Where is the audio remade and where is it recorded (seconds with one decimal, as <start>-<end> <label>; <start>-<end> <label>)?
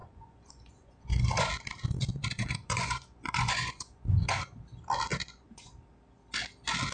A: 0.0-1.5 remade; 1.5-2.1 recorded; 2.1-4.6 remade; 4.6-5.1 recorded; 5.1-5.7 remade; 5.7-6.9 recorded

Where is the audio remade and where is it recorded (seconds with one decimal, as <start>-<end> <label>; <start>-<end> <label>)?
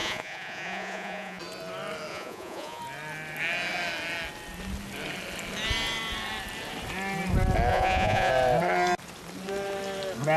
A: 0.0-1.4 remade; 1.4-2.1 recorded; 2.1-2.8 remade; 2.8-7.7 recorded; 7.7-8.3 remade; 8.3-10.4 recorded